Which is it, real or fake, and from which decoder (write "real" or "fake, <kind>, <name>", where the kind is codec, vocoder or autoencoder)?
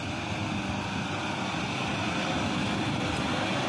real